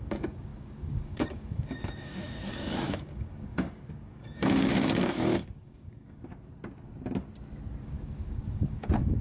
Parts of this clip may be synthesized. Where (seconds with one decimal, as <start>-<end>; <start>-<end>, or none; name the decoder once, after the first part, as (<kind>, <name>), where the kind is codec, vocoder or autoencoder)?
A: 0.0-6.3 (codec, DAC); 7.8-9.2